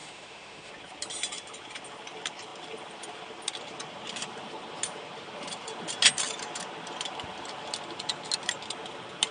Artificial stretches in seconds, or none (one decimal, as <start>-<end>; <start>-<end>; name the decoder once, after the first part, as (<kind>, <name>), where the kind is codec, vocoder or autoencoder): 0.0-0.7 (autoencoder, DAC-VAE)